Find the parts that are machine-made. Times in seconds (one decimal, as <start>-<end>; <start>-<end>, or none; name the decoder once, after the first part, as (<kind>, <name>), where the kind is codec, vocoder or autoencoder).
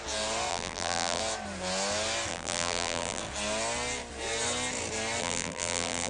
0.5-1.2 (vocoder, BigVGAN v2); 2.3-3.2; 5.2-6.1